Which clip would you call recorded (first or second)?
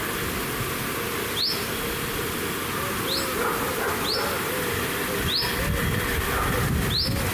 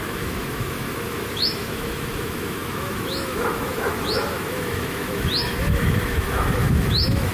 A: first